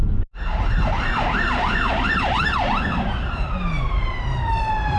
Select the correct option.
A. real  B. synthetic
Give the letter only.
B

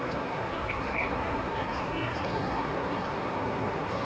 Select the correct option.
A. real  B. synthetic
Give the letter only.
B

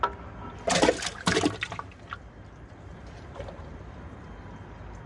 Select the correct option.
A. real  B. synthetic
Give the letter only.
A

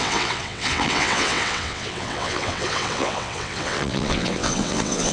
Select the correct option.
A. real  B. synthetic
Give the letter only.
B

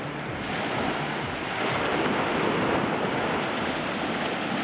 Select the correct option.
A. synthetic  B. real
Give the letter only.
B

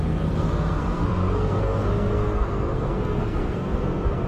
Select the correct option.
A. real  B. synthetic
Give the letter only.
B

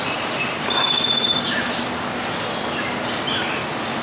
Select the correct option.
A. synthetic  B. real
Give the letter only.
B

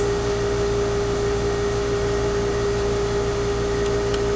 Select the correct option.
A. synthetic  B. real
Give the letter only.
B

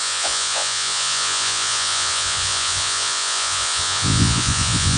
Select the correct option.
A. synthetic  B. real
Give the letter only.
A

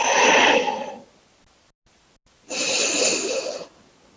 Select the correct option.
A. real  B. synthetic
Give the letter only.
A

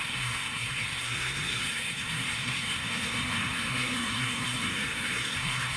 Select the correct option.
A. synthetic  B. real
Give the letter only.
A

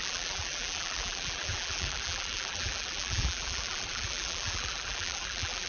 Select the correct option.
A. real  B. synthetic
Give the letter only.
B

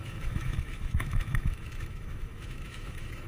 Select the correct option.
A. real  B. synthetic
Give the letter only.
B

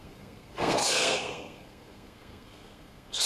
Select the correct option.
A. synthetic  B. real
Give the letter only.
A